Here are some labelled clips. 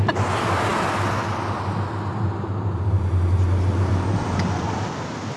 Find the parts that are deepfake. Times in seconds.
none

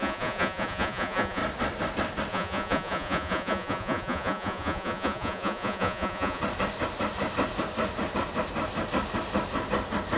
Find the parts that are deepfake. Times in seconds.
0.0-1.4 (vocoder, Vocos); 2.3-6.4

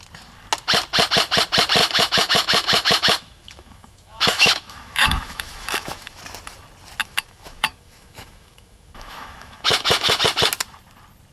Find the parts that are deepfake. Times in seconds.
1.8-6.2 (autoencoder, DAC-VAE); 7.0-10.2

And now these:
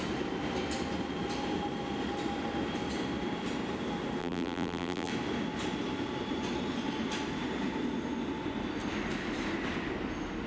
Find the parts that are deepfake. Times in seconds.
4.2-5.1 (vocoder, BigVGAN v2)

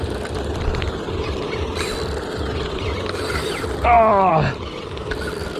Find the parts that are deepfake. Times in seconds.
none

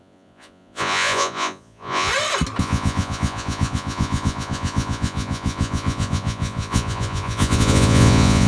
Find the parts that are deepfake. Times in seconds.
0.0-2.1 (vocoder, Vocos); 2.6-8.5

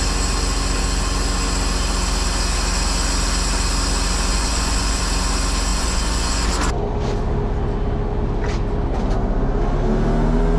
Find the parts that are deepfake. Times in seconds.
4.3-5.0 (vocoder, Vocos); 5.7-6.5